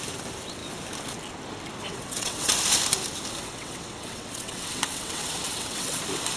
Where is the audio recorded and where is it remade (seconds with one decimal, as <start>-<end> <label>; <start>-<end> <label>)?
0.0-1.8 recorded; 1.8-2.5 remade; 2.5-3.5 recorded; 3.5-6.0 remade; 6.0-6.4 recorded